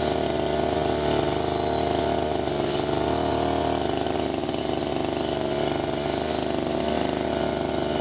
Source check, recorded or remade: recorded